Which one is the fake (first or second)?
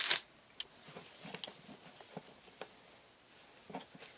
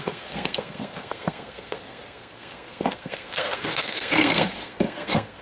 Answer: second